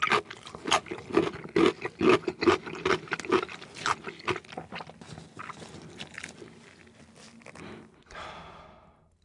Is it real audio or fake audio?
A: real